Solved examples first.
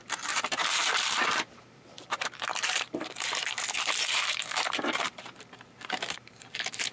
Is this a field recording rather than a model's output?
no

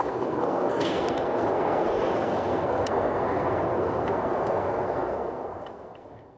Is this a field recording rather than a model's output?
no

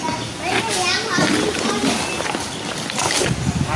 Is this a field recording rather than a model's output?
yes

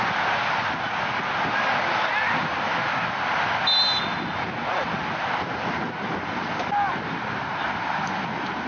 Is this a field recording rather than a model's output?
yes